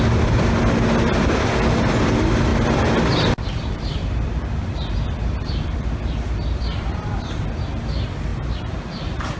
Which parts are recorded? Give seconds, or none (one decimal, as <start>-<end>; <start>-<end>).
0.0-2.5; 7.7-8.3; 8.9-9.4